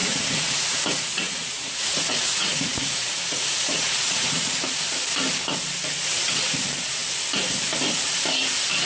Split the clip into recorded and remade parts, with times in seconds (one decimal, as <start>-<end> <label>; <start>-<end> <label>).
0.0-4.5 remade; 4.5-8.9 recorded